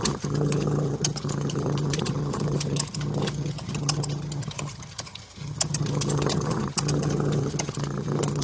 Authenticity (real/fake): fake